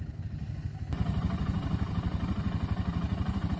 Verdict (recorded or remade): recorded